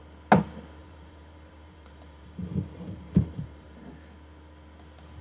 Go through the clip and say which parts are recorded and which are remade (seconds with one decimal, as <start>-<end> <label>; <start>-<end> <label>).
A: 0.0-0.8 recorded; 0.8-3.9 remade; 3.9-5.2 recorded